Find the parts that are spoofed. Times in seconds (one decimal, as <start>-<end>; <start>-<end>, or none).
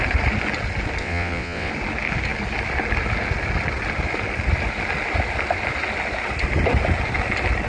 1.0-1.7